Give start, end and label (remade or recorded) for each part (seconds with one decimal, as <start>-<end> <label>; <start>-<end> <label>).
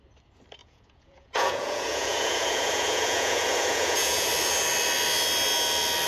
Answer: 0.0-0.6 recorded; 0.6-4.3 remade; 4.3-6.1 recorded